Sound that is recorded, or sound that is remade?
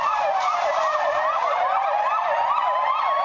recorded